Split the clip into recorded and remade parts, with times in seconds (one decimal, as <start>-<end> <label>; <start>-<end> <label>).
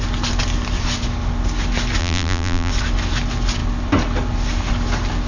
0.0-2.0 recorded; 2.0-2.7 remade; 2.7-5.3 recorded